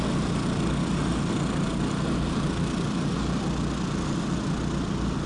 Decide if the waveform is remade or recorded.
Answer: recorded